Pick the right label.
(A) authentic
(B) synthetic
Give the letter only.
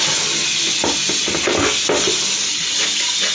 A